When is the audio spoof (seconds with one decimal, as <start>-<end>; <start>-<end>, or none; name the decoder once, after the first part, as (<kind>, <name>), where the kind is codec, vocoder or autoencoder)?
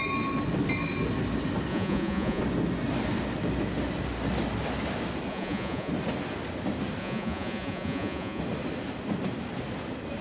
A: 1.7-2.4 (vocoder, Vocos); 5.3-5.9; 7.0-8.4